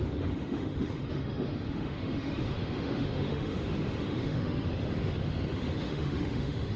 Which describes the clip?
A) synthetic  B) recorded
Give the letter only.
A